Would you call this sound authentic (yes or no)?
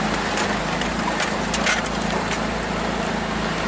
yes